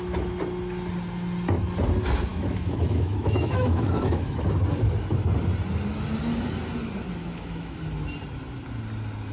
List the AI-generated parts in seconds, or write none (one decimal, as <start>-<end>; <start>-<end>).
2.3-4.5; 7.2-7.8